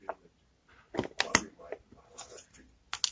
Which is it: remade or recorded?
recorded